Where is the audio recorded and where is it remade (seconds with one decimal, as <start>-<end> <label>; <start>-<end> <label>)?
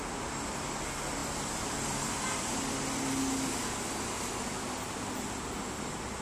0.0-6.2 recorded